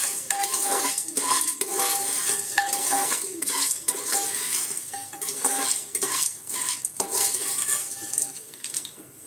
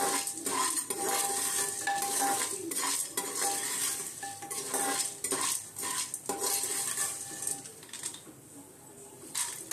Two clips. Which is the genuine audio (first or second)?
second